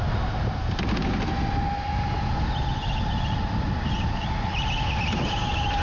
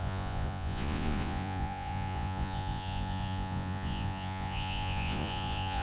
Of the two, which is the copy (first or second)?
second